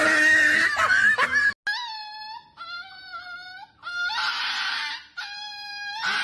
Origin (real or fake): real